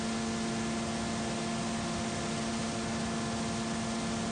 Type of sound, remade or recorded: recorded